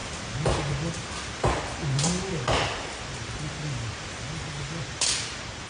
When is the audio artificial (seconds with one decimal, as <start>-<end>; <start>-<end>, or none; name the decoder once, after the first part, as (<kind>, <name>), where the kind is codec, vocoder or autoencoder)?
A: none